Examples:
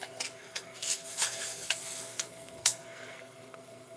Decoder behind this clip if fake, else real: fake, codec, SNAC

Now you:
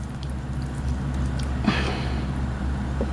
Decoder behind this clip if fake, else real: real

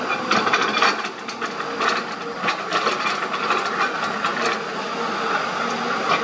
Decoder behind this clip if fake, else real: real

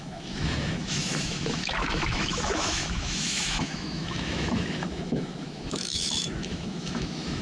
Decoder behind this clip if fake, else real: fake, autoencoder, DAC-VAE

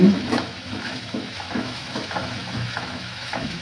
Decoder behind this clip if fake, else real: fake, autoencoder, DAC-VAE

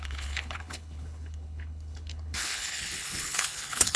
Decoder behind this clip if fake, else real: fake, codec, HILCodec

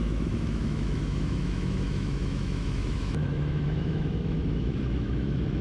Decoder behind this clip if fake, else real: fake, autoencoder, DAC-VAE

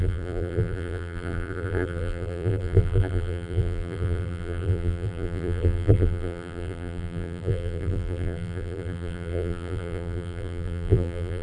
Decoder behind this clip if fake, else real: fake, vocoder, BigVGAN v2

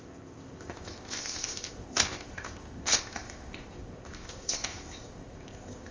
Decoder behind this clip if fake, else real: fake, codec, ZipCodec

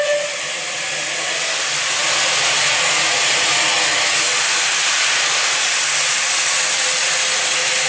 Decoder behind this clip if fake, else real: real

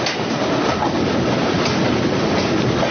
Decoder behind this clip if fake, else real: real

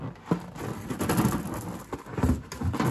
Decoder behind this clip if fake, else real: real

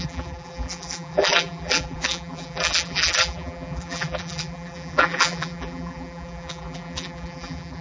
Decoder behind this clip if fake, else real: fake, vocoder, BigVGAN v2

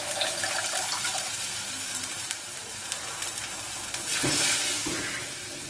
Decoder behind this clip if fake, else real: fake, vocoder, BigVGAN v2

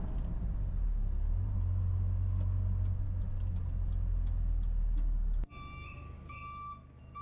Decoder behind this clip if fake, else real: real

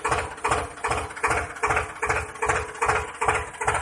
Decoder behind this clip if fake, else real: real